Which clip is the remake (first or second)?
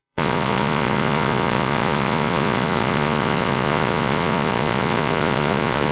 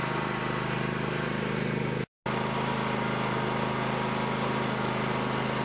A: first